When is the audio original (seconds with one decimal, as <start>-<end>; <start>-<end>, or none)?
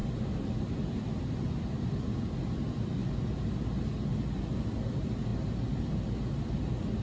0.0-7.0